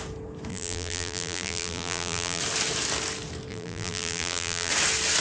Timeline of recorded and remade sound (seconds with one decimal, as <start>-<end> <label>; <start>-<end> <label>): 0.0-0.5 recorded; 0.5-2.4 remade; 2.4-3.5 recorded; 3.5-4.7 remade; 4.7-5.2 recorded